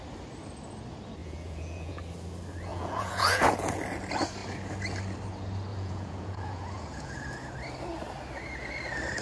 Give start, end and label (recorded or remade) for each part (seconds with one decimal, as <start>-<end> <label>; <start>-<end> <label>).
0.0-1.2 recorded; 1.2-2.0 remade; 2.0-2.7 recorded; 2.7-3.8 remade; 3.8-5.7 recorded; 5.7-7.5 remade; 7.5-9.2 recorded